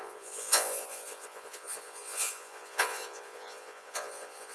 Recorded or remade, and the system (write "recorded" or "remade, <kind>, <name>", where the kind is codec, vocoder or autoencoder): remade, vocoder, Vocos